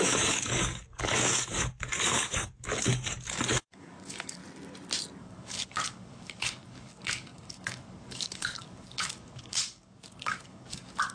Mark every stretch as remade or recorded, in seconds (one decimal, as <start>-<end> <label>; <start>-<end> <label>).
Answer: 0.0-4.4 remade; 4.4-5.2 recorded; 5.2-11.1 remade